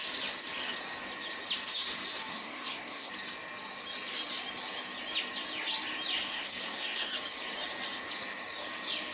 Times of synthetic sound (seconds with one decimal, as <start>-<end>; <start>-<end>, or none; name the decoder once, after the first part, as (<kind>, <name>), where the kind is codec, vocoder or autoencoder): 2.3-3.1 (codec, SNAC); 6.3-7.1